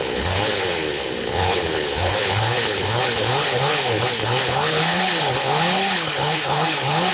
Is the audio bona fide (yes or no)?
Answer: no